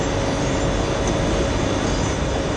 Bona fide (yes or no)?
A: yes